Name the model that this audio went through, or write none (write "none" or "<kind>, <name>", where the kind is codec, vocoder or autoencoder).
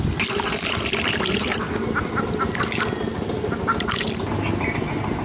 none